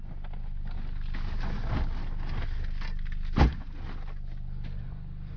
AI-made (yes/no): no